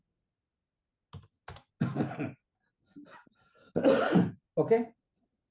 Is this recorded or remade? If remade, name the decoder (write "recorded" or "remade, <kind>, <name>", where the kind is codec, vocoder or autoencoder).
recorded